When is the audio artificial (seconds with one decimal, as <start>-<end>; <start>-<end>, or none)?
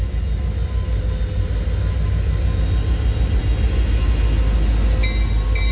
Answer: none